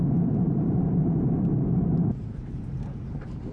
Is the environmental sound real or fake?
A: fake